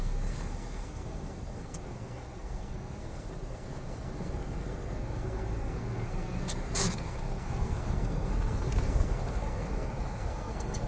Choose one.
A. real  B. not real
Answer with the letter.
B